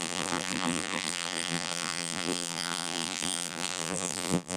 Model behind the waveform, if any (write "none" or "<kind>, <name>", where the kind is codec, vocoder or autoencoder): vocoder, BigVGAN v2